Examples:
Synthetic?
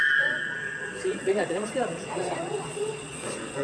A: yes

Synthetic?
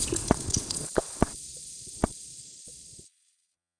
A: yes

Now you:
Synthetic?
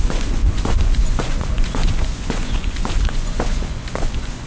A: yes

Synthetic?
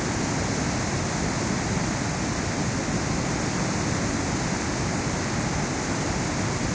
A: no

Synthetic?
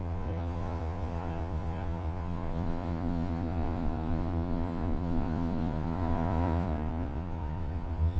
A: yes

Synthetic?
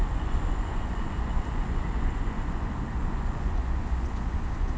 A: yes